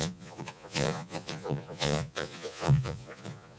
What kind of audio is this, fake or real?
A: fake